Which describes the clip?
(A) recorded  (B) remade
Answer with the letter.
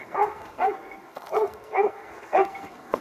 B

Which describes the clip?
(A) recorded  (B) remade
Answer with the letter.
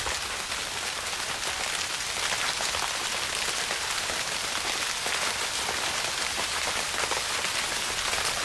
A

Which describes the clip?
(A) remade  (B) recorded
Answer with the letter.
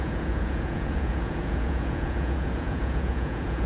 A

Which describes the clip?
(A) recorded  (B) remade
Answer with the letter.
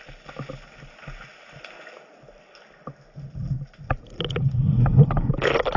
A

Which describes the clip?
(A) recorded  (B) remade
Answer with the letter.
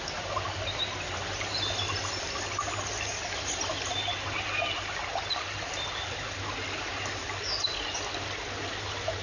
A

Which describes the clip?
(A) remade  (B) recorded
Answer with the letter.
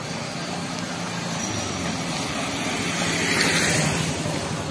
B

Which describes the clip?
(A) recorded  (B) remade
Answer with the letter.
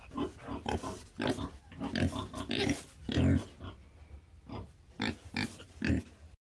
A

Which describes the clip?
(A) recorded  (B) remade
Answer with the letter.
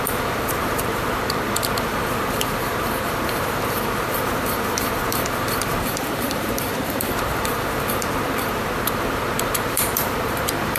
B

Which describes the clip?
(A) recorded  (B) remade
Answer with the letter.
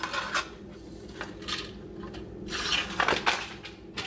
A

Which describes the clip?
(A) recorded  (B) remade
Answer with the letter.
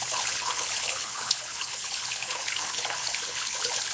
B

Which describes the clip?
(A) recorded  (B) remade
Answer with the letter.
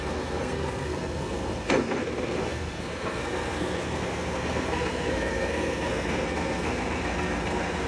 B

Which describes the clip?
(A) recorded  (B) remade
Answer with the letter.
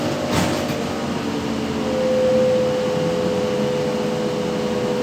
A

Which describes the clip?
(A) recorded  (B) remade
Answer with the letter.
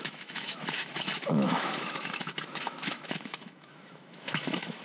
B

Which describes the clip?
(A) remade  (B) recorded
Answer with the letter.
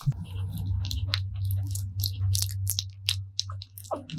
B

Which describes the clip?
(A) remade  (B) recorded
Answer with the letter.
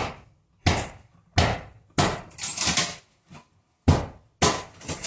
B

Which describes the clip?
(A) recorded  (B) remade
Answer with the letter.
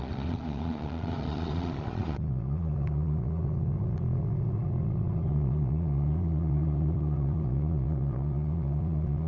B